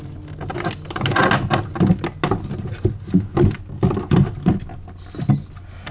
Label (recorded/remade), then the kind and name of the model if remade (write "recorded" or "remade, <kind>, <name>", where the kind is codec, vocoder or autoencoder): recorded